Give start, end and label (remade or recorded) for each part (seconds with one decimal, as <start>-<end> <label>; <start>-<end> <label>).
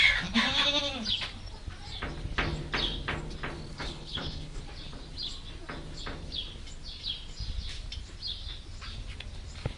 0.0-3.7 recorded; 3.7-4.6 remade; 4.6-9.8 recorded